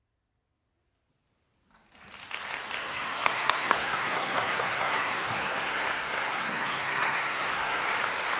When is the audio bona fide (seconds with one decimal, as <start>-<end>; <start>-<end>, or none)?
0.0-2.8; 7.8-8.4